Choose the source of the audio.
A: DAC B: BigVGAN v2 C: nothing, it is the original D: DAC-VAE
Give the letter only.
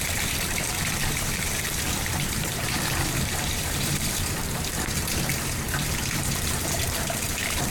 B